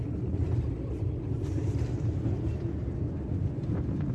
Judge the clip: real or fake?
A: real